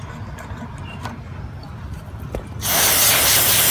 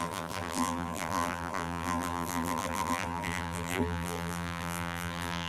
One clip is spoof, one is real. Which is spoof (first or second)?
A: second